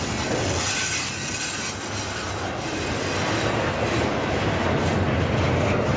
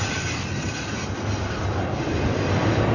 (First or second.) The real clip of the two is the first